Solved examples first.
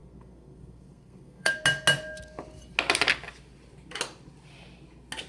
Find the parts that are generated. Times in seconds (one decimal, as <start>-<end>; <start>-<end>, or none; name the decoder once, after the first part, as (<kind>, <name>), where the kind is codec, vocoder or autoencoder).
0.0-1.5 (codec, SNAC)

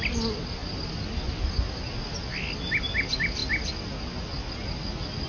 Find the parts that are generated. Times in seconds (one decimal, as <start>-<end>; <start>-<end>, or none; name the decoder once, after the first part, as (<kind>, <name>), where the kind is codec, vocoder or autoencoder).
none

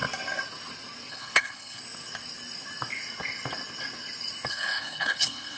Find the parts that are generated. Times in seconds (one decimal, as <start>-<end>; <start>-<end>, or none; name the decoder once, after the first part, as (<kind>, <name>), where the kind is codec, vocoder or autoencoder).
1.1-1.8 (codec, HILCodec); 4.5-5.6

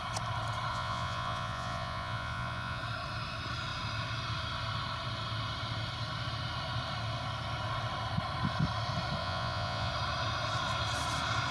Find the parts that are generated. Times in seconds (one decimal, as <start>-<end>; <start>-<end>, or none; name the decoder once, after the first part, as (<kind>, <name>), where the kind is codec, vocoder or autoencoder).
0.7-2.8 (vocoder, Vocos); 9.2-9.9